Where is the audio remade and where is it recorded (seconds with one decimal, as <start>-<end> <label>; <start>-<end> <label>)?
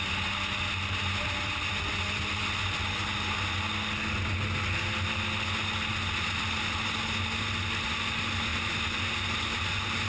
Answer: 0.0-10.1 recorded